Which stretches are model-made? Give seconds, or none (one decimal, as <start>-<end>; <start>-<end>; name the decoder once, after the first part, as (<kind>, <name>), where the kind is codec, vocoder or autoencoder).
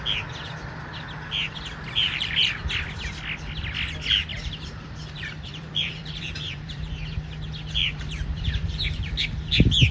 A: 2.0-2.6 (vocoder, BigVGAN v2); 4.3-6.9; 7.8-9.1